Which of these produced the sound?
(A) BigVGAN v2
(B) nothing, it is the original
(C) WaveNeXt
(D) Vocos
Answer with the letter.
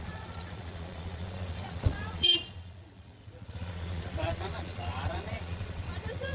D